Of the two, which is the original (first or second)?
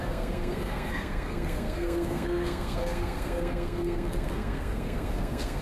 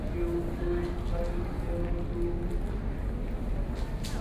second